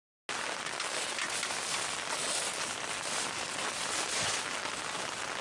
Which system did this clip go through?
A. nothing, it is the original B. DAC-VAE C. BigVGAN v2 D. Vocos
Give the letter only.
A